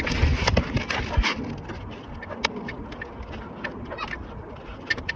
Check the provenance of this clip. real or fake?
real